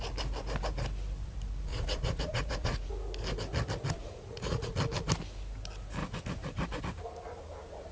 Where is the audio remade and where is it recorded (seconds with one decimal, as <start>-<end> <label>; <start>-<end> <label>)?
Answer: 0.0-1.7 recorded; 1.7-2.9 remade; 2.9-4.0 recorded; 4.0-4.7 remade; 4.7-6.0 recorded; 6.0-6.8 remade; 6.8-7.9 recorded